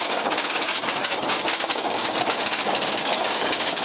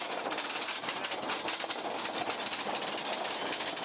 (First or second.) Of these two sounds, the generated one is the first